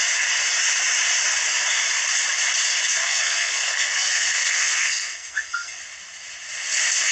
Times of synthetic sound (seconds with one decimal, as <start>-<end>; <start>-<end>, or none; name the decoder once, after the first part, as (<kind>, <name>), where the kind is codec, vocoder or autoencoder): 3.0-5.8 (codec, SNAC)